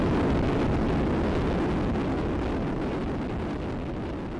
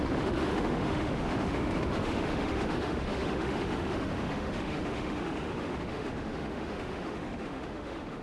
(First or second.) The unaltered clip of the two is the first